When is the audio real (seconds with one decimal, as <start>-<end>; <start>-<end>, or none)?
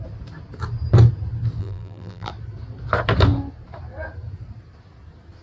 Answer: 0.0-1.6; 2.3-5.4